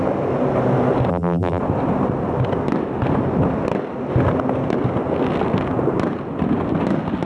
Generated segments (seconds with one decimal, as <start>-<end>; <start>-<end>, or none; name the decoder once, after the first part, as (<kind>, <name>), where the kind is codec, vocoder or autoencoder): 1.1-1.6 (vocoder, BigVGAN v2)